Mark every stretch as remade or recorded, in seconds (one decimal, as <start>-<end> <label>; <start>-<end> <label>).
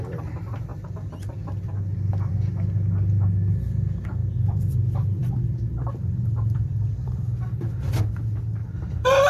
0.0-4.2 recorded; 4.2-8.0 remade; 8.0-8.6 recorded; 8.6-9.3 remade